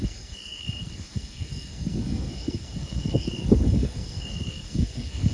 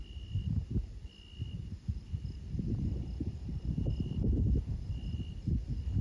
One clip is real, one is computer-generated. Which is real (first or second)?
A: second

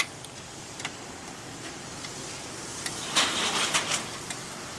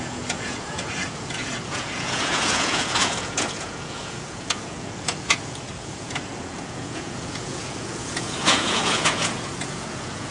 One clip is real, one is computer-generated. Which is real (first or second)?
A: first